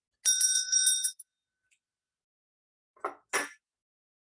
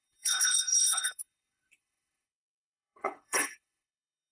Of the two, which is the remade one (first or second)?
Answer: second